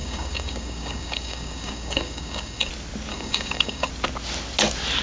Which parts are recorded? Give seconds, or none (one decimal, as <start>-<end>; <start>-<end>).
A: 2.7-3.1; 3.9-5.0